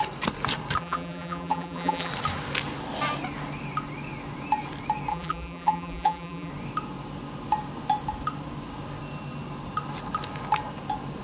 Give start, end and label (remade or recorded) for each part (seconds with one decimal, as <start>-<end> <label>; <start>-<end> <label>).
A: 0.0-0.8 recorded; 0.8-2.1 remade; 2.1-5.1 recorded; 5.1-6.5 remade; 6.5-11.2 recorded